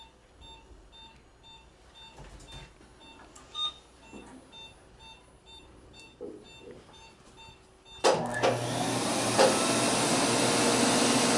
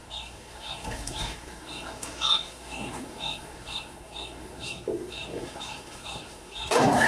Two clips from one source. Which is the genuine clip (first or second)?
first